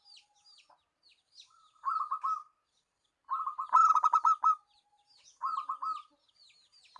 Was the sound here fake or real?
real